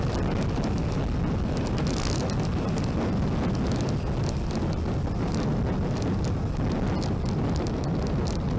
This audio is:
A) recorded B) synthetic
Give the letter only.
A